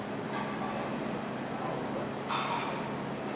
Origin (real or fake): real